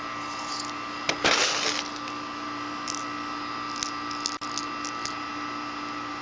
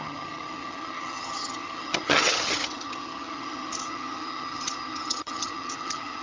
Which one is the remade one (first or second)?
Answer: second